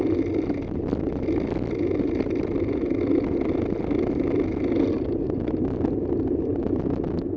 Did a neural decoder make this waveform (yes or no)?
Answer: no